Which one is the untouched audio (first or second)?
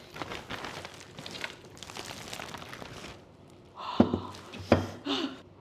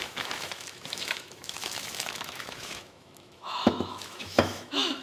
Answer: first